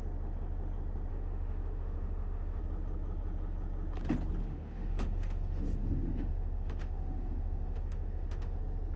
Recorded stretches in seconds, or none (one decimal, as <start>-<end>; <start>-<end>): 0.0-1.1; 2.6-4.4; 8.6-9.0